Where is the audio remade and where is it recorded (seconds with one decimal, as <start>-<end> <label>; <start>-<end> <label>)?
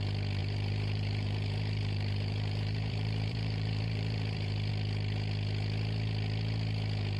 0.0-0.4 recorded; 0.4-4.7 remade; 4.7-7.2 recorded